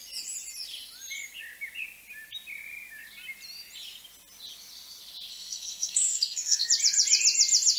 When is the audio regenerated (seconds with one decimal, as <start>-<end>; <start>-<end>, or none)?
5.3-6.7